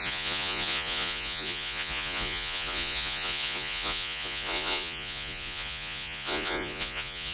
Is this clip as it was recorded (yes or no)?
no